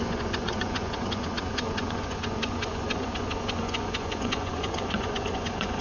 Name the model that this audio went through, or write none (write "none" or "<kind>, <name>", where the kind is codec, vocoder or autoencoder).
vocoder, Vocos